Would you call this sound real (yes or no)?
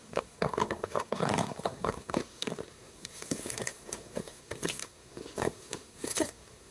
no